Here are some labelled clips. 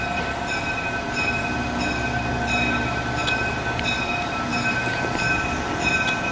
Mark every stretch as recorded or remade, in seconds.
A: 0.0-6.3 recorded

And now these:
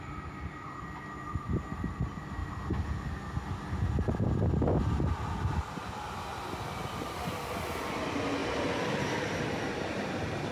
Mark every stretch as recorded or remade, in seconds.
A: 0.0-8.4 recorded; 8.4-10.1 remade; 10.1-10.5 recorded